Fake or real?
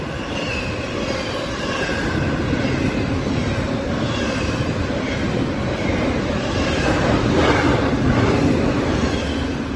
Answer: real